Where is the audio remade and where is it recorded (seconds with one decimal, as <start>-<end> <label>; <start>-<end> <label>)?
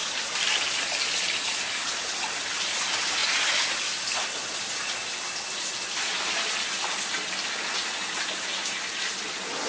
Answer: 0.0-9.7 recorded